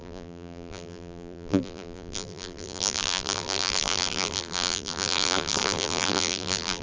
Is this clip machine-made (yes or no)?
yes